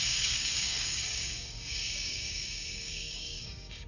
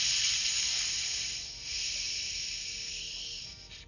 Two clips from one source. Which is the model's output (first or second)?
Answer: first